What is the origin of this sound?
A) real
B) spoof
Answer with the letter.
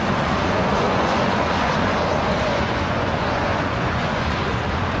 B